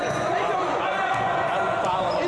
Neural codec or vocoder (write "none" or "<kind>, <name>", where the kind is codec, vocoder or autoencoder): vocoder, Vocos